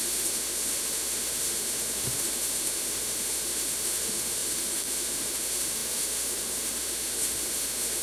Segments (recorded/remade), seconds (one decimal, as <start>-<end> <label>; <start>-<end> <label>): 0.0-8.0 remade